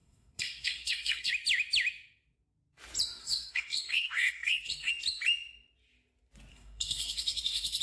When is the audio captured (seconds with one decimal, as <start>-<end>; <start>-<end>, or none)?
1.3-3.2; 4.9-6.5